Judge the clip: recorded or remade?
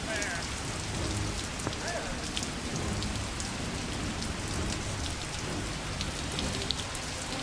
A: recorded